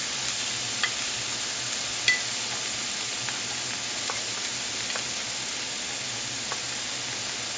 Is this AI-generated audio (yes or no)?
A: no